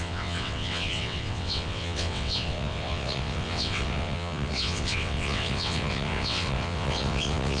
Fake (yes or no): yes